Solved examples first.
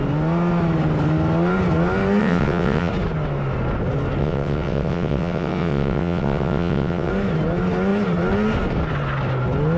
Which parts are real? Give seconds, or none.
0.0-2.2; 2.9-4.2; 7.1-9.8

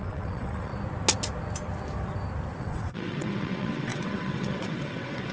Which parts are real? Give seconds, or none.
0.7-2.6